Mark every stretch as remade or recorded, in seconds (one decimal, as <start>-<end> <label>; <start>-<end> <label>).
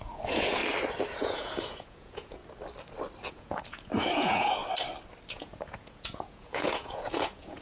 0.0-0.6 remade; 0.6-1.2 recorded; 1.2-2.4 remade; 2.4-3.3 recorded; 3.3-4.6 remade; 4.6-5.3 recorded; 5.3-7.6 remade